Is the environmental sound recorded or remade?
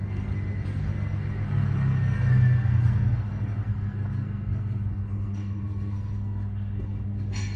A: remade